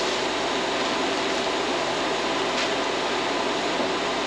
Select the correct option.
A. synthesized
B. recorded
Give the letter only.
B